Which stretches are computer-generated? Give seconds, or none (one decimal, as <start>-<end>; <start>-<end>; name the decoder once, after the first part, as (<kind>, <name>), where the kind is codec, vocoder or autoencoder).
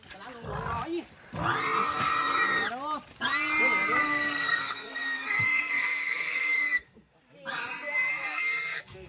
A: 4.0-7.2 (codec, SNAC); 8.2-9.1